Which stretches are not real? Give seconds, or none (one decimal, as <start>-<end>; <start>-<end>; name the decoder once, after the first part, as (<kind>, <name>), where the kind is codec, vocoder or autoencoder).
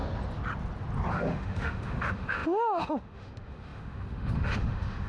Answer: 1.1-5.1 (autoencoder, DAC-VAE)